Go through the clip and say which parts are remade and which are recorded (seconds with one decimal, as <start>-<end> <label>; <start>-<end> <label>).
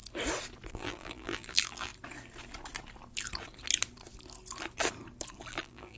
0.0-0.7 recorded; 0.7-1.9 remade; 1.9-5.5 recorded; 5.5-6.0 remade